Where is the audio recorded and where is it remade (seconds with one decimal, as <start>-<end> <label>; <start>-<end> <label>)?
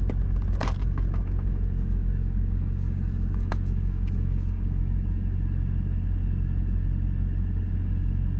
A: 0.0-0.8 recorded; 0.8-4.8 remade; 4.8-8.4 recorded